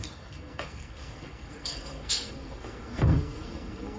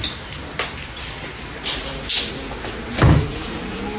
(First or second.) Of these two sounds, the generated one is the first